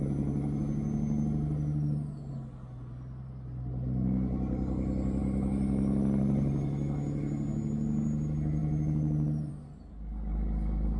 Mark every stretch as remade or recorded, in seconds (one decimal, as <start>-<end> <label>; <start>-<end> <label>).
0.0-11.0 recorded